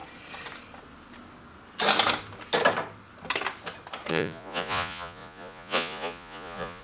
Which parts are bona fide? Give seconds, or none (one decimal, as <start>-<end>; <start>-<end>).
0.0-4.1